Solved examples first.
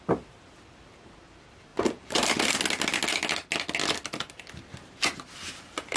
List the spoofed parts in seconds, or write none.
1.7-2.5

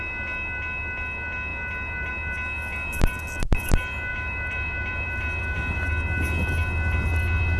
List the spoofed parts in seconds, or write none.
4.1-5.9

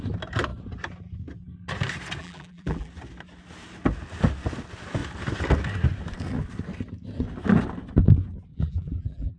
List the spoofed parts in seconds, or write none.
2.2-2.9; 8.5-9.4